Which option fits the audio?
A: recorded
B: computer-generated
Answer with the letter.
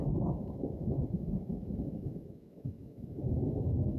B